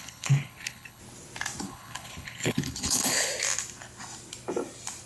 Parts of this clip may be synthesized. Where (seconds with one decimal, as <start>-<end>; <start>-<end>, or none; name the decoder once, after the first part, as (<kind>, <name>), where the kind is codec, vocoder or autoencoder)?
0.0-1.0 (codec, HILCodec); 1.6-3.3